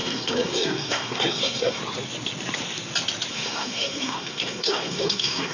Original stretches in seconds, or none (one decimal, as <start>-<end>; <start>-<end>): 1.8-3.3